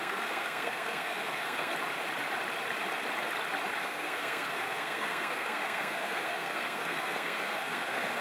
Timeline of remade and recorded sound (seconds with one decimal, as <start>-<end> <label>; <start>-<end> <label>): 0.0-1.7 remade; 1.7-3.8 recorded; 3.8-8.2 remade